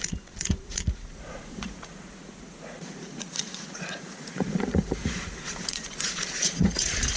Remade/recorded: remade